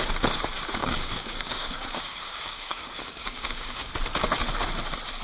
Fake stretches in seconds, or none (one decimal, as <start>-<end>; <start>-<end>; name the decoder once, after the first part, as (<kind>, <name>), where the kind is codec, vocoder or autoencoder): 0.8-3.9 (codec, DAC)